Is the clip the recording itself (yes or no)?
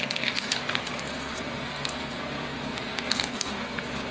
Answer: no